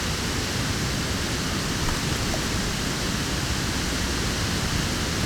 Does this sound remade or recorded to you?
recorded